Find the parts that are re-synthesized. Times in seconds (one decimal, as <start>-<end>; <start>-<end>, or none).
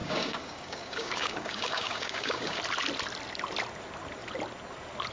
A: 0.0-2.6